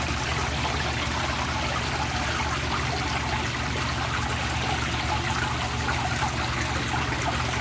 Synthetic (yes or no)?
no